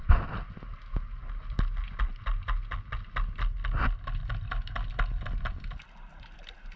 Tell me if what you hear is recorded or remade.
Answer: recorded